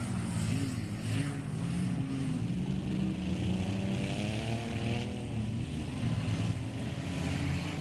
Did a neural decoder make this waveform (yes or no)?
no